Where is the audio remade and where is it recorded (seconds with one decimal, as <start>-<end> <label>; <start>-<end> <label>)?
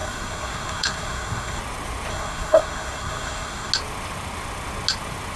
0.0-1.6 remade; 1.6-2.1 recorded; 2.1-3.7 remade; 3.7-5.4 recorded